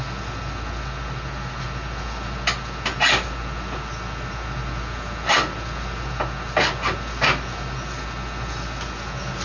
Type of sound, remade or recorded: recorded